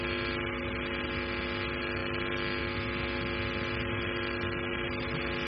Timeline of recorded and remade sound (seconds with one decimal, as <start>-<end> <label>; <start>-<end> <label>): 0.0-5.5 recorded